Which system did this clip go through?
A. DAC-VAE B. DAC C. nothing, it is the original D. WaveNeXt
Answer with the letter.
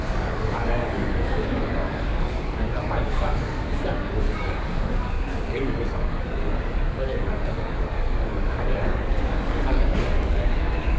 B